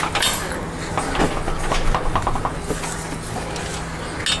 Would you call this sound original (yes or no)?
yes